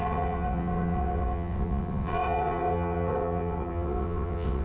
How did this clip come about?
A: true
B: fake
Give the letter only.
B